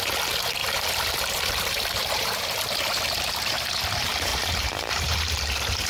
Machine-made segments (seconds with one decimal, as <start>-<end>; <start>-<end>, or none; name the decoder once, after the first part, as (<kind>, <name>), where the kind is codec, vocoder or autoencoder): 0.6-3.7 (vocoder, BigVGAN v2); 4.3-5.9